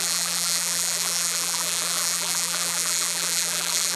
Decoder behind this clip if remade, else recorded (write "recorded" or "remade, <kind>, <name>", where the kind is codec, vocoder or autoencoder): remade, vocoder, BigVGAN v2